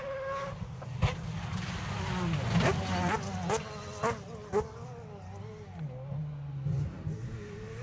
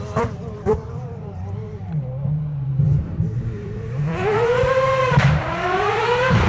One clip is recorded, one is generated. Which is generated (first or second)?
second